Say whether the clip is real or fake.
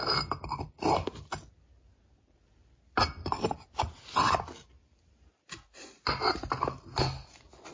real